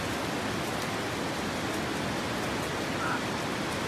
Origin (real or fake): real